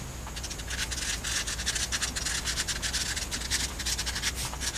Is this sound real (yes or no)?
yes